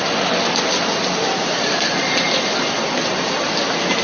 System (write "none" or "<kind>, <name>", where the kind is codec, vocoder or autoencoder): none